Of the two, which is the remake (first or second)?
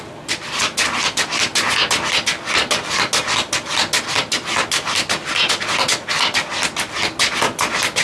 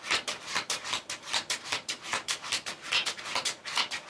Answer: second